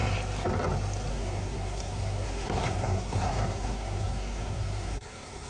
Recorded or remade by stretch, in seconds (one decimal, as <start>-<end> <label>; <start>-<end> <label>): 0.0-1.1 recorded; 1.1-5.5 remade